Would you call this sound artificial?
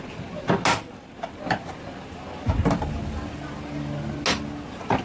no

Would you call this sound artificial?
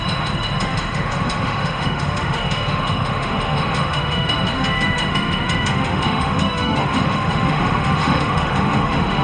yes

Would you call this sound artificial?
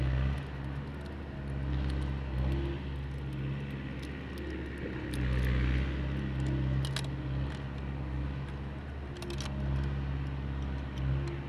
no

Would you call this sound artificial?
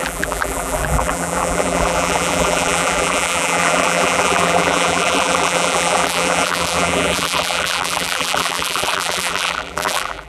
yes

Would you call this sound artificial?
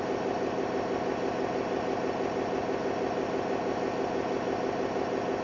no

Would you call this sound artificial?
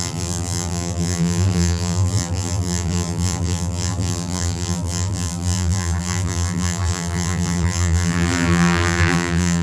yes